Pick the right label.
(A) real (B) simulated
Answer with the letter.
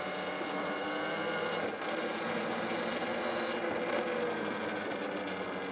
A